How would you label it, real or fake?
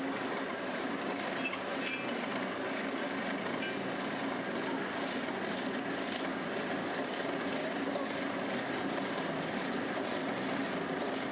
real